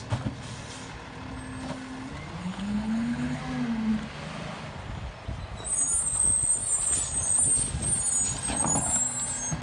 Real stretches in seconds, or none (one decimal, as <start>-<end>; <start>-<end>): 0.0-2.4; 3.4-9.6